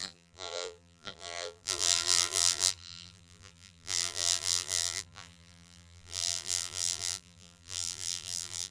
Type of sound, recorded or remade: remade